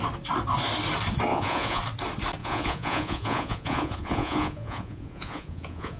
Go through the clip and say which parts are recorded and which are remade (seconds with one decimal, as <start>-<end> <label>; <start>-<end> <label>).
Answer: 0.0-1.3 recorded; 1.3-1.8 remade; 1.8-2.4 recorded; 2.4-6.0 remade